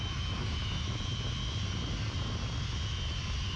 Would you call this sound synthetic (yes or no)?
no